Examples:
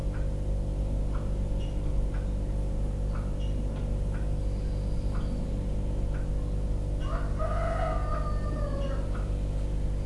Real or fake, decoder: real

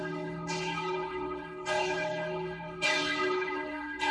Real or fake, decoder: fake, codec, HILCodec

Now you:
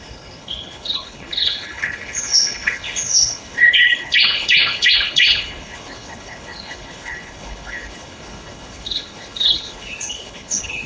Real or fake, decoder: fake, codec, HILCodec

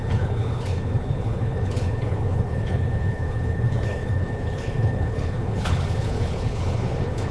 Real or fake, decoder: fake, codec, HILCodec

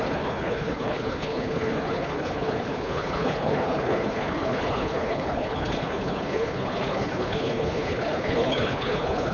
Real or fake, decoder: fake, codec, HILCodec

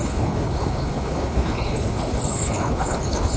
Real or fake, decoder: fake, codec, HILCodec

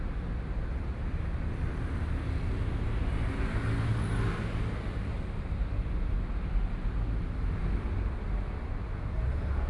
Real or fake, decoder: real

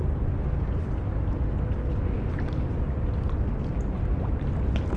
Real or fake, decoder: real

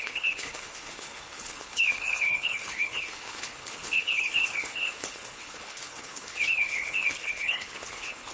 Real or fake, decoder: fake, codec, HILCodec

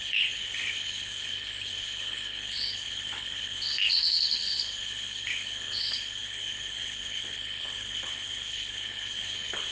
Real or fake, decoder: fake, codec, HILCodec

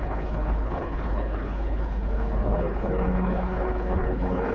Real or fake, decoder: fake, codec, HILCodec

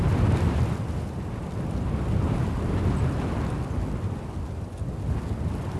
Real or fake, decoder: real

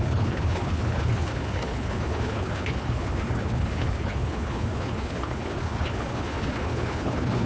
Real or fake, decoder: fake, codec, HILCodec